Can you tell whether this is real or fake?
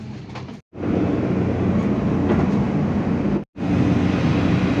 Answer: real